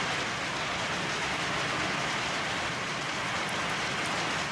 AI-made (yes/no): no